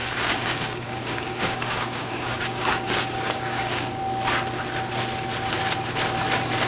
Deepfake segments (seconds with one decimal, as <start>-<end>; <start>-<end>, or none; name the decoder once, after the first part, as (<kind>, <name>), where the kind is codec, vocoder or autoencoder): 0.0-4.0 (codec, DAC)